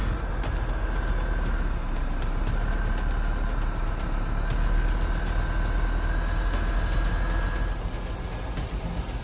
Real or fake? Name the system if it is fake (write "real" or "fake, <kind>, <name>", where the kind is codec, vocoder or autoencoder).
real